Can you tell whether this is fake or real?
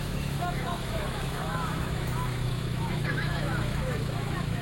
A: fake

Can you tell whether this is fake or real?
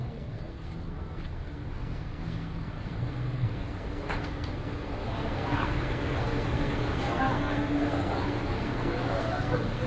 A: fake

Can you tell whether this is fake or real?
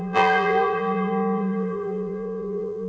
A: fake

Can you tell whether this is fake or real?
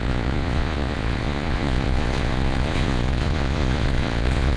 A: fake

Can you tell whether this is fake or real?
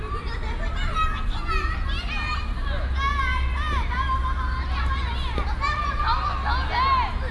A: real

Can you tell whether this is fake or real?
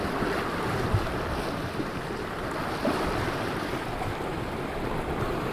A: real